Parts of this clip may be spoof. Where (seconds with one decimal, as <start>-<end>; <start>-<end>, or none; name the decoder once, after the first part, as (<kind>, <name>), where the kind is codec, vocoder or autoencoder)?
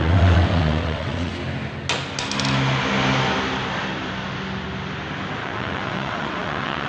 0.0-1.3 (vocoder, WaveNeXt); 5.4-6.9